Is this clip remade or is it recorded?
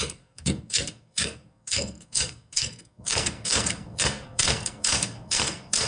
remade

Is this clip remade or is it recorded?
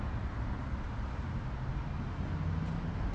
recorded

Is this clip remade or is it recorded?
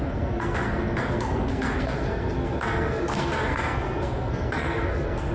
remade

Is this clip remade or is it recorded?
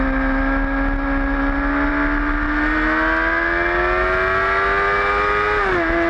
recorded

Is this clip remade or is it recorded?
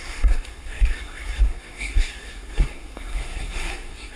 remade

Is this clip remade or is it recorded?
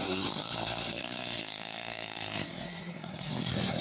remade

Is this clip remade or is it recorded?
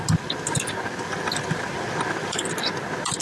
recorded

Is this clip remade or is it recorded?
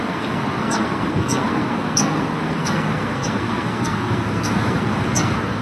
remade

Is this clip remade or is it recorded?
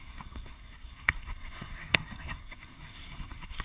remade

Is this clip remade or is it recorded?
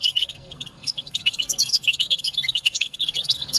remade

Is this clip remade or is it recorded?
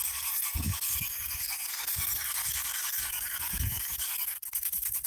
remade